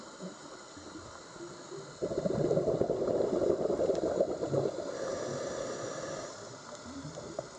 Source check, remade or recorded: recorded